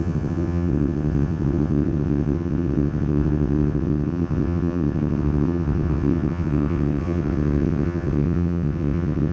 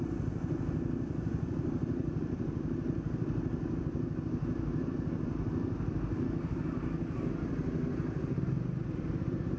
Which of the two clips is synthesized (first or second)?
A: first